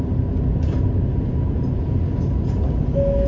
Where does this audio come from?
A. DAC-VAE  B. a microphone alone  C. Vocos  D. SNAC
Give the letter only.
B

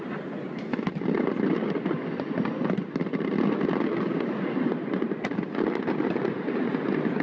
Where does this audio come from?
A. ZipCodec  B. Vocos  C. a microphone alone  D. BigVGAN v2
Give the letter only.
C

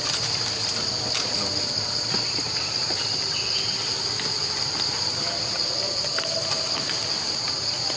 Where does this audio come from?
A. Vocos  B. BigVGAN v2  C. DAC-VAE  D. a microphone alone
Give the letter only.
D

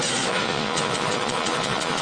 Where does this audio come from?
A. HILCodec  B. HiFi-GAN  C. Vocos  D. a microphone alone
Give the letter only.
C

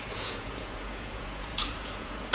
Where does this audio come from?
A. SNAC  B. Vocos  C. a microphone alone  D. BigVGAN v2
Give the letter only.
B